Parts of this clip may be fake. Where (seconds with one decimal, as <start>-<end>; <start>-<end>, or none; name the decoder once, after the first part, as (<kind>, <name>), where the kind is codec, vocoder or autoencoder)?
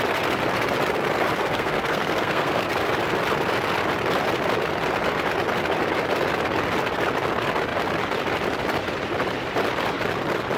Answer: 1.4-2.7 (codec, SNAC)